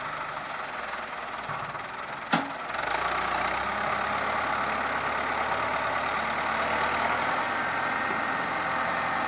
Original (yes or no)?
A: yes